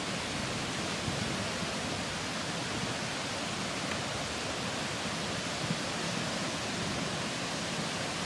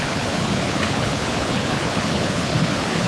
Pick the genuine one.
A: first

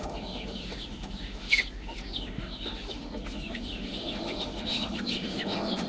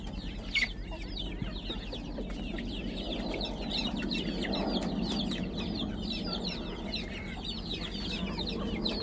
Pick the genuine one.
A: second